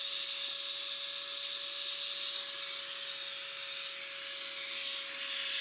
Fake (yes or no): no